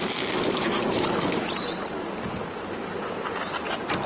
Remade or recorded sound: recorded